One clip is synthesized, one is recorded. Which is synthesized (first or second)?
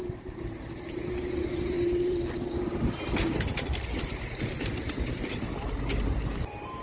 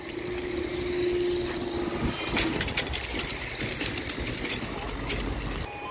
first